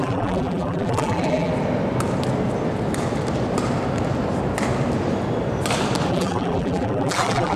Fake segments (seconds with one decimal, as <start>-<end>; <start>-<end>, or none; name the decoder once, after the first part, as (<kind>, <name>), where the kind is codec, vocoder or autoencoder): 0.0-1.5 (vocoder, BigVGAN v2); 6.1-7.6